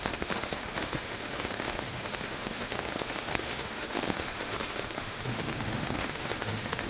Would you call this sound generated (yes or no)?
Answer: yes